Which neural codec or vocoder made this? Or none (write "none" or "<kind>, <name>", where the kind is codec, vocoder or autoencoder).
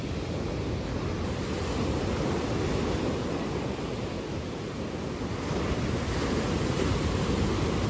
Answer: none